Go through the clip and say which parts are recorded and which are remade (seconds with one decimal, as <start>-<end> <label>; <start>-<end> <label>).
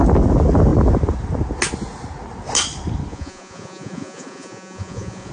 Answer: 0.0-3.1 recorded; 3.1-5.3 remade